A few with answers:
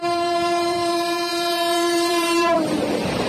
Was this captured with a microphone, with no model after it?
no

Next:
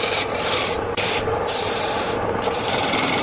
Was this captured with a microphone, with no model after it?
no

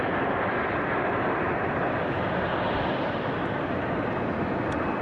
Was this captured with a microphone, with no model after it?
yes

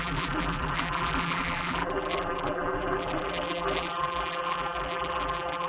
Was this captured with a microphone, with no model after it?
no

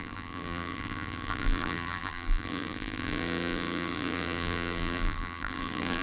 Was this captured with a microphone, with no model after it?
no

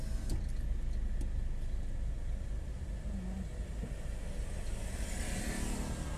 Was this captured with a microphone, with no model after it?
yes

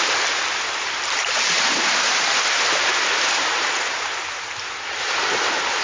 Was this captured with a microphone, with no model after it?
no